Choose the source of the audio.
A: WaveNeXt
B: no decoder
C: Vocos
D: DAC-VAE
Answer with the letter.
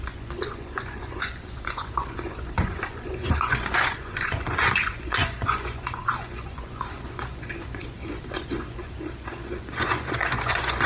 C